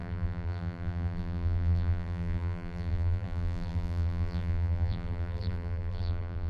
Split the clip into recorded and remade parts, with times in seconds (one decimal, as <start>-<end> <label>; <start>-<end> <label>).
0.0-6.5 remade